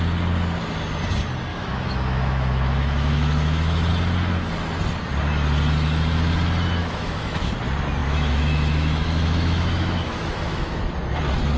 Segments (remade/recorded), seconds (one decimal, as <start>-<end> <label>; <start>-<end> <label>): 0.0-1.5 recorded; 1.5-3.9 remade; 3.9-6.8 recorded; 6.8-7.5 remade; 7.5-8.0 recorded; 8.0-10.8 remade; 10.8-11.6 recorded